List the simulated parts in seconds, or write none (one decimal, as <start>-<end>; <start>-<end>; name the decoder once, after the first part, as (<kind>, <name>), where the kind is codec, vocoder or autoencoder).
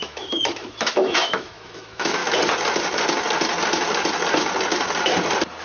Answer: 0.0-2.2 (autoencoder, DAC-VAE)